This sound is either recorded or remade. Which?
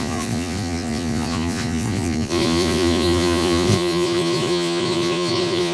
remade